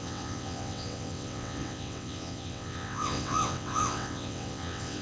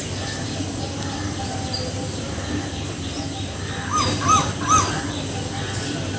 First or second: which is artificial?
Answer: first